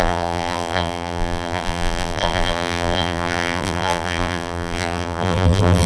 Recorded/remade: remade